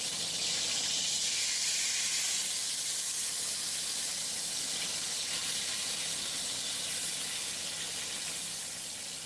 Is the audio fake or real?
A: real